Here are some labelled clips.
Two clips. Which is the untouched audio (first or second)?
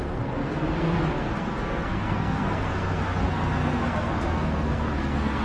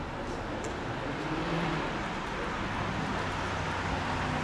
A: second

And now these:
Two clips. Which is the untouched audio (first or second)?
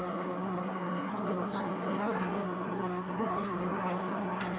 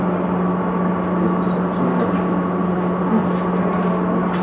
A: second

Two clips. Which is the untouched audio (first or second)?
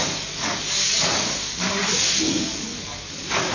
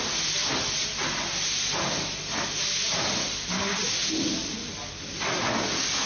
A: second